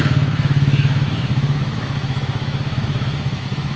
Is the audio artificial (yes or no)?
yes